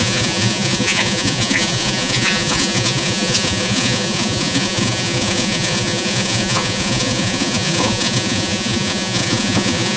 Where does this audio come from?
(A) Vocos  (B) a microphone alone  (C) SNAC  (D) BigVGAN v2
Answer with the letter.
A